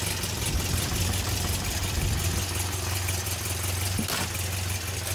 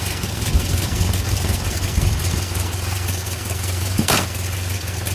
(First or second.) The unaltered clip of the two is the first